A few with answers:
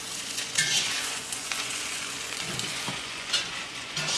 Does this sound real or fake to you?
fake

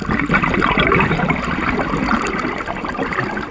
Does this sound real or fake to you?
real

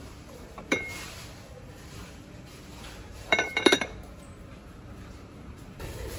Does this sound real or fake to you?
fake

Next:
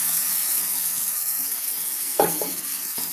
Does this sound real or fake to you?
fake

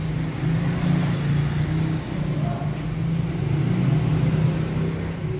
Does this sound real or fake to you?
real